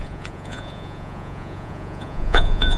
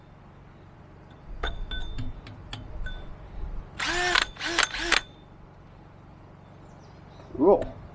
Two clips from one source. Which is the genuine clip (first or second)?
second